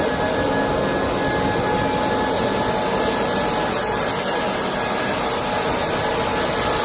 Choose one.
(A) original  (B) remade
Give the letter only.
A